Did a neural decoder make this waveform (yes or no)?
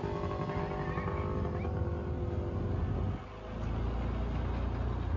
no